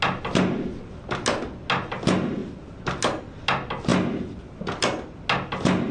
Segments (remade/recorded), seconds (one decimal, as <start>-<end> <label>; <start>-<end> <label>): 0.0-5.9 recorded